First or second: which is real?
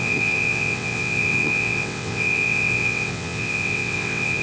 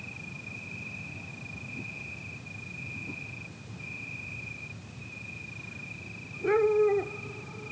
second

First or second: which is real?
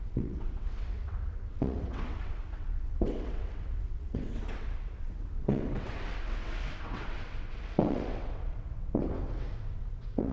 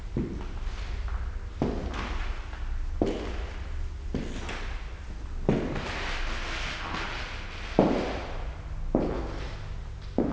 second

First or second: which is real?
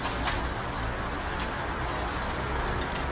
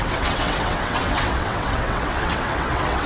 first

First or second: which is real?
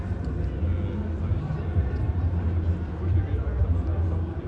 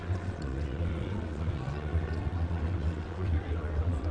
first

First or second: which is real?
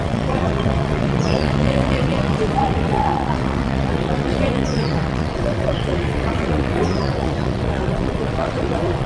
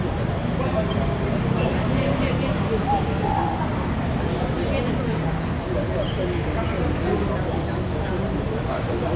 second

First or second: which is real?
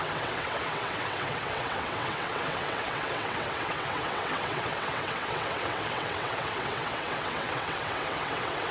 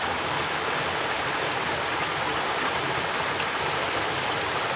second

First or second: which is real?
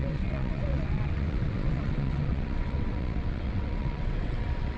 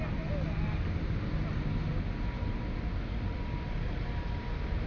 second